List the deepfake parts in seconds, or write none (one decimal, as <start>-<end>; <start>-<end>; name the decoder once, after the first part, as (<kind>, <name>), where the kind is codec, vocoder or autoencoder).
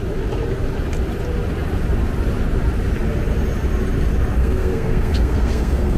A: 4.4-6.0 (codec, SNAC)